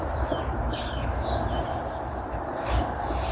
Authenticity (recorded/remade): remade